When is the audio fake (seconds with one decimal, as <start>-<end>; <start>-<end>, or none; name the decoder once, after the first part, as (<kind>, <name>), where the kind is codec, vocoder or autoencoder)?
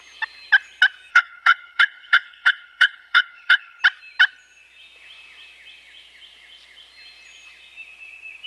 1.1-3.8 (codec, HILCodec)